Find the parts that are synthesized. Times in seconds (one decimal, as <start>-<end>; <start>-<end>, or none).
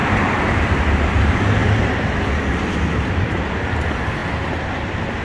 0.0-1.1; 1.6-3.5